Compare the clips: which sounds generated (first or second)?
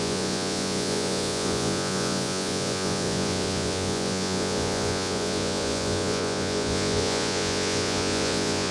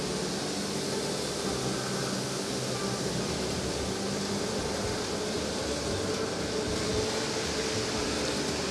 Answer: first